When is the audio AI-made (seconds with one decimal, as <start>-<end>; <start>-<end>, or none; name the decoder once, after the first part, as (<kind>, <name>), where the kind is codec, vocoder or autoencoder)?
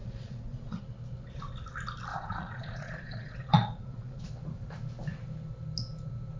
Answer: 0.0-0.8 (vocoder, Vocos); 2.1-4.2